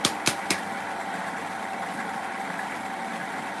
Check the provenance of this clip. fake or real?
real